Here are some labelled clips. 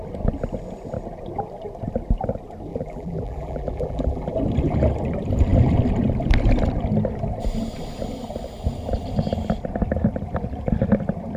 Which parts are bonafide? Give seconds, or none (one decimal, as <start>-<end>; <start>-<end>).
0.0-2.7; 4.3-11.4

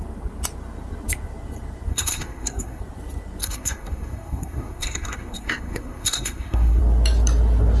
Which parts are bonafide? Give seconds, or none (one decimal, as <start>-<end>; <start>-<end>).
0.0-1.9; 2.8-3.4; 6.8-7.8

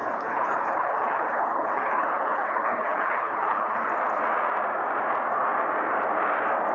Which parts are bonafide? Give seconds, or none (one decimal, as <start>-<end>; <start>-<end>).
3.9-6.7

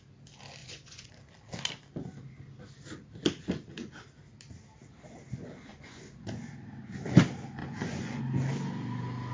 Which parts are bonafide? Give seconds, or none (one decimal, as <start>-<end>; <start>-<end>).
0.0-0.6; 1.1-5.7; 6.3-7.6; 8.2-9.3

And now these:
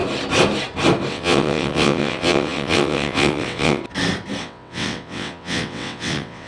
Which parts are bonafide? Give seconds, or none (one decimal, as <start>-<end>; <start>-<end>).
0.0-1.1; 3.8-4.4

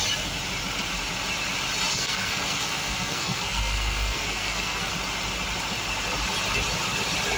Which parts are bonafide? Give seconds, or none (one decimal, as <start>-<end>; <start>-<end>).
0.0-1.9; 4.9-7.4

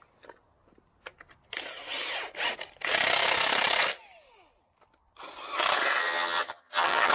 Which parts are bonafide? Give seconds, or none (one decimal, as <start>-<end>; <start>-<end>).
0.0-6.0